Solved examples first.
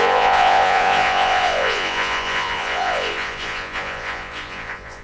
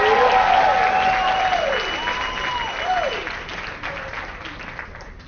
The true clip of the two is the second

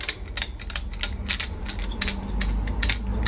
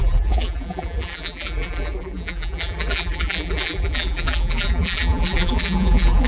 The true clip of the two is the first